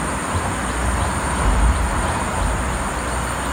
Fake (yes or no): no